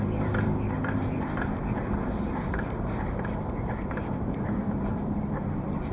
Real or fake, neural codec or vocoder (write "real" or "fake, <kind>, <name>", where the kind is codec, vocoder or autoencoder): fake, vocoder, BigVGAN v2